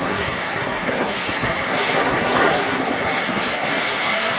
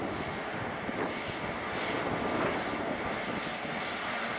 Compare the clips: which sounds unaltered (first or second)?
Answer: second